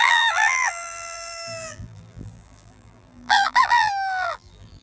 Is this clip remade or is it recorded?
remade